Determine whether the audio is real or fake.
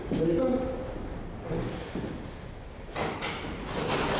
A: real